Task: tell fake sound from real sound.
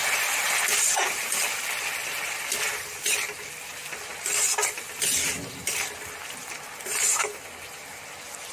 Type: real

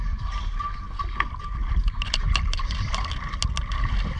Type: real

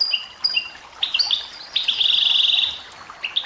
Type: real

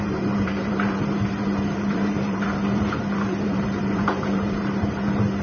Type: fake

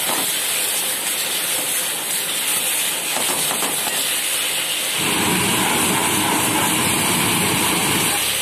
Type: real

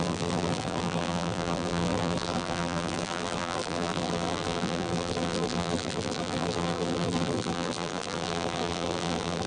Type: fake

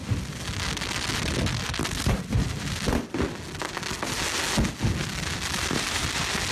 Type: real